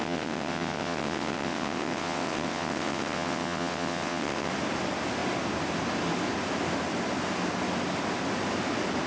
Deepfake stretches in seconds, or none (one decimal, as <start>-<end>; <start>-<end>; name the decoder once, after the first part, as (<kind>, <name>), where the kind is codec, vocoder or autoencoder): 0.0-4.5 (vocoder, WaveNeXt)

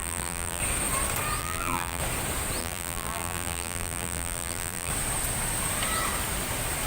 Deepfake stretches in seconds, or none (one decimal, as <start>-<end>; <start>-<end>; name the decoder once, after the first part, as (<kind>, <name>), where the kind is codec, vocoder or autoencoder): 0.0-0.6 (vocoder, BigVGAN v2); 1.4-2.0; 2.6-4.9

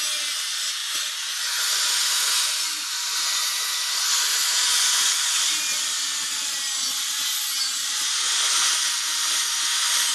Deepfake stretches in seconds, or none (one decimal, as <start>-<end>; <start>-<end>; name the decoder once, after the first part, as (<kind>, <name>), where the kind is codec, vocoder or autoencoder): 0.8-5.4 (vocoder, Vocos); 7.8-8.7

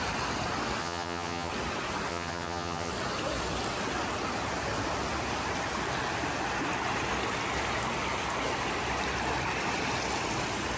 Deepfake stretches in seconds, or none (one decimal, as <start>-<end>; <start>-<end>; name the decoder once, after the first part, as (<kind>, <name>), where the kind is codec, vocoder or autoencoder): 0.8-1.5 (vocoder, HiFi-GAN); 2.1-2.9

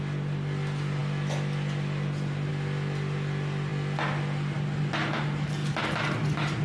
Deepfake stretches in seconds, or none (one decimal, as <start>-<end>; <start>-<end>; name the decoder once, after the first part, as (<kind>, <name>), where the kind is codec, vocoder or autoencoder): none

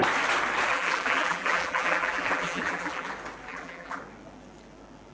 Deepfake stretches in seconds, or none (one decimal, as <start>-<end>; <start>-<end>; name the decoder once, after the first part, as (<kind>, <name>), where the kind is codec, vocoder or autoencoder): 0.7-3.1 (vocoder, BigVGAN v2); 3.5-4.0

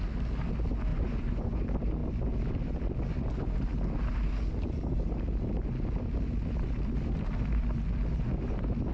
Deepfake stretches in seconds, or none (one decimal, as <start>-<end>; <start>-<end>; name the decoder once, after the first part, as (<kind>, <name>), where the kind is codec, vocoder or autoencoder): 0.9-1.6 (vocoder, Vocos)

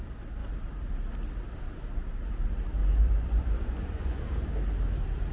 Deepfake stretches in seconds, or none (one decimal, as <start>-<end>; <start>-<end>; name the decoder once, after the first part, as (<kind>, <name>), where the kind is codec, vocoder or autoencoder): 2.8-4.2 (vocoder, Vocos)